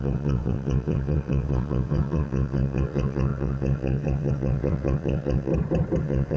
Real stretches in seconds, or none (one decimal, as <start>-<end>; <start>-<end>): 5.5-6.0